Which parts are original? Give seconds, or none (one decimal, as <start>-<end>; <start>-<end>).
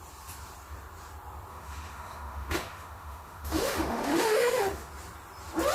0.0-1.5; 4.9-5.7